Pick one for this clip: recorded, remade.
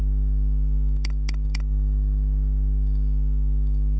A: remade